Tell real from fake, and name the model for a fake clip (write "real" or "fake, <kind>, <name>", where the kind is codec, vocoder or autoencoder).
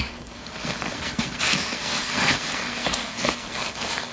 fake, codec, SNAC